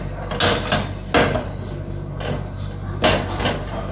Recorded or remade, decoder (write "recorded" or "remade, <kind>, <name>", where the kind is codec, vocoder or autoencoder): recorded